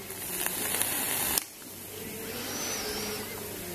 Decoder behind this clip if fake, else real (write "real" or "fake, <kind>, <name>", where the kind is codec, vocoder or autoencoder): real